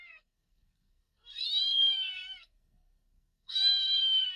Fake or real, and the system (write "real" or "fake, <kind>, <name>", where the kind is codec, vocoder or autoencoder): fake, codec, SNAC